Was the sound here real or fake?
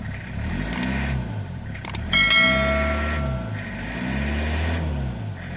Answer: real